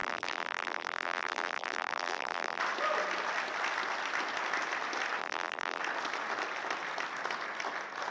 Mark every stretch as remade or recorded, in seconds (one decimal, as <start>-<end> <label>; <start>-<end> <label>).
0.0-2.6 remade; 2.6-5.2 recorded; 5.2-5.8 remade; 5.8-8.1 recorded